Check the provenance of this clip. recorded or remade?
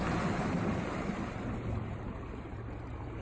remade